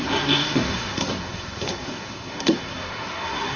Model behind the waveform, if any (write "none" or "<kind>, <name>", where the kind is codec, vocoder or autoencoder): codec, SNAC